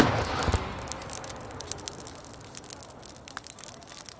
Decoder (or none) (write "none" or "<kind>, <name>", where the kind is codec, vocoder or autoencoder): none